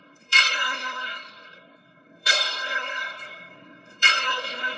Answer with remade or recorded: remade